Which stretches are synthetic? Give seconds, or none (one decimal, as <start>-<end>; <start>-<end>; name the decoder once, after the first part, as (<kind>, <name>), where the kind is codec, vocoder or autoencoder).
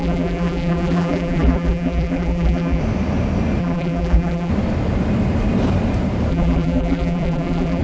0.0-2.8 (vocoder, BigVGAN v2); 3.6-4.5; 6.3-7.8